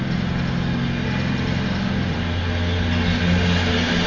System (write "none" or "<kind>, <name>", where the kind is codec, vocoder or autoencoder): none